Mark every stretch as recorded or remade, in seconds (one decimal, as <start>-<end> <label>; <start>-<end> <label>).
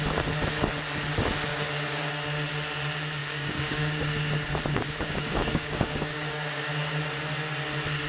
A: 0.0-1.5 recorded; 1.5-2.1 remade; 2.1-3.2 recorded; 3.2-4.2 remade; 4.2-4.7 recorded; 4.7-6.7 remade; 6.7-8.1 recorded